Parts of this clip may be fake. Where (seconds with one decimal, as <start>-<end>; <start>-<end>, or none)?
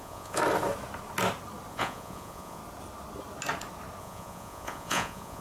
0.0-0.4; 1.7-2.6; 4.0-5.4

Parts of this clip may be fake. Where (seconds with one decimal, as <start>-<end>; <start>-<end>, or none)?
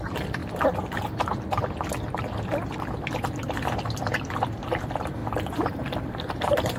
0.0-0.4; 4.5-5.2; 5.7-6.8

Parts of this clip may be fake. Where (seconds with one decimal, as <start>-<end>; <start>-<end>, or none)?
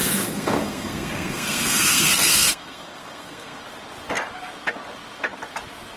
0.0-3.6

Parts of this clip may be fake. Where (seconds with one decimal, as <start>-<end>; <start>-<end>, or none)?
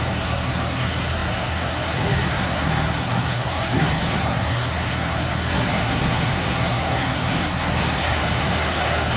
0.0-9.2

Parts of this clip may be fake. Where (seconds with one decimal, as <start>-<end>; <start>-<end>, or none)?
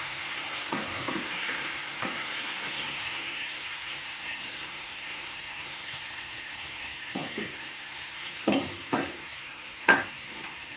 0.0-10.8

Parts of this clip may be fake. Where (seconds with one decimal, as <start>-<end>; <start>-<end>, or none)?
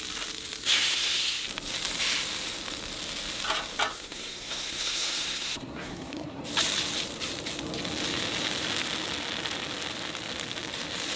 0.6-1.4; 3.9-6.4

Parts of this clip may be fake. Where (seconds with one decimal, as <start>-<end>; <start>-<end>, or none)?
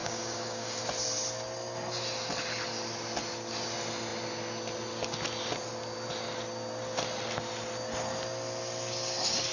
0.0-0.8